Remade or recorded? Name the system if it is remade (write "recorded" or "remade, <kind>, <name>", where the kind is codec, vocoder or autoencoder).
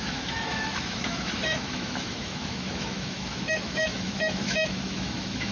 remade, autoencoder, DAC-VAE